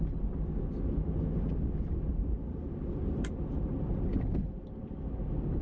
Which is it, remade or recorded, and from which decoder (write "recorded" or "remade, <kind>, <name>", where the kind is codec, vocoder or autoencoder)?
recorded